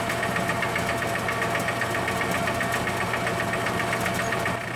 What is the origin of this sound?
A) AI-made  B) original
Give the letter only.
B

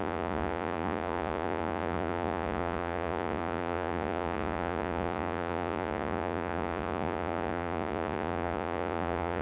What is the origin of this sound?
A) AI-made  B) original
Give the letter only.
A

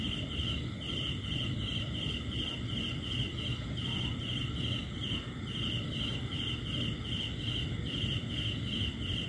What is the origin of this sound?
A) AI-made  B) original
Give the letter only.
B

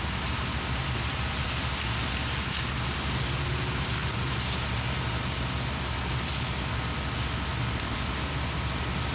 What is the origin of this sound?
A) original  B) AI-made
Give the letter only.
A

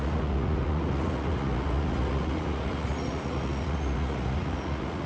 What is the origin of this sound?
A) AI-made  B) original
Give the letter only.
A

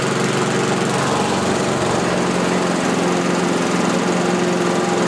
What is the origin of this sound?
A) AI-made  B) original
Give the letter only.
B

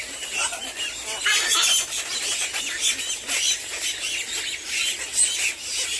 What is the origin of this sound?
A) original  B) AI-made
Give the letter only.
A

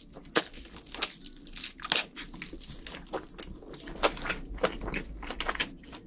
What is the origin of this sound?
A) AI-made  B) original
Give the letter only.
B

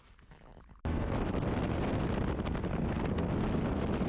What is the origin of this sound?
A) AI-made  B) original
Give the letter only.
B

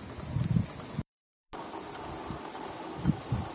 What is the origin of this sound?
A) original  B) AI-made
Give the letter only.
A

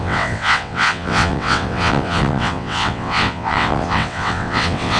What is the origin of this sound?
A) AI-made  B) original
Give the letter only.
A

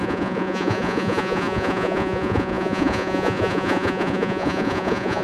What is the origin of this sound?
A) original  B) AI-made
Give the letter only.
B